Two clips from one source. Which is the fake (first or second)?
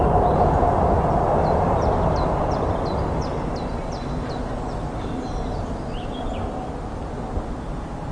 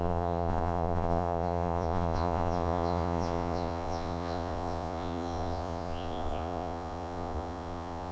second